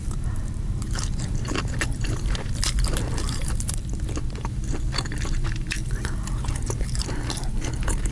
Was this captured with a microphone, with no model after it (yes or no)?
no